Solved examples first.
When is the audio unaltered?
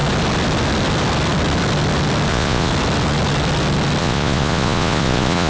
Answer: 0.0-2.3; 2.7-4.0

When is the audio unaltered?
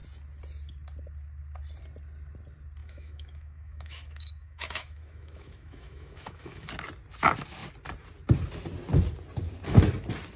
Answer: 0.0-2.8; 6.7-10.4